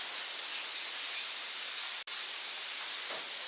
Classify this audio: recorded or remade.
recorded